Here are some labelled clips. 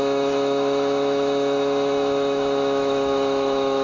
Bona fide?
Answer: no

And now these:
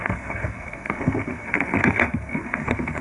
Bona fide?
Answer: no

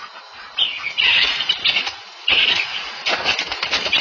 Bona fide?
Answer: no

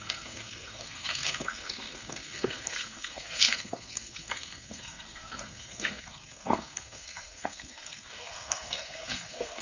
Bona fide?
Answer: no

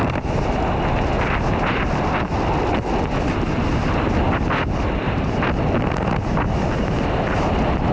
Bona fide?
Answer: yes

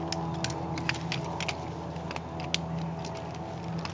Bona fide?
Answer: yes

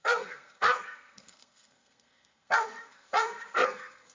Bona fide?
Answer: no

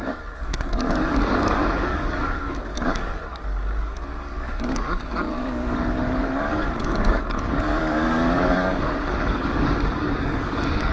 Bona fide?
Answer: no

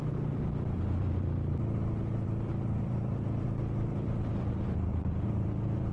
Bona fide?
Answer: no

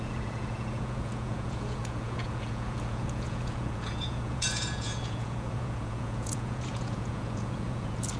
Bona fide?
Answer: no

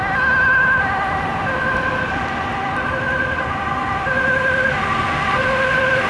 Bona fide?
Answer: yes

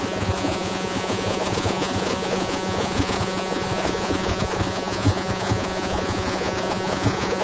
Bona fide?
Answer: no